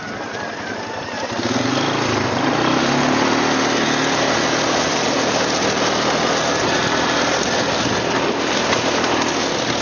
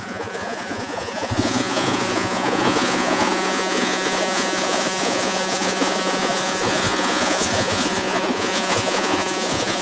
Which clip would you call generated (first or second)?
second